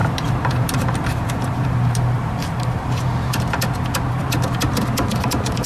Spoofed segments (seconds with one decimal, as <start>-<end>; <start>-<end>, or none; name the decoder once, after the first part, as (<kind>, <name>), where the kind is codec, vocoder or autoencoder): 0.0-3.4 (vocoder, BigVGAN v2)